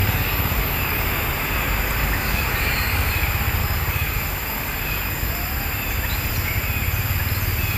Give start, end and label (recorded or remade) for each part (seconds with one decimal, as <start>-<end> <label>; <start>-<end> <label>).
0.0-1.0 remade; 1.0-2.0 recorded; 2.0-3.1 remade; 3.1-3.6 recorded; 3.6-5.3 remade; 5.3-7.8 recorded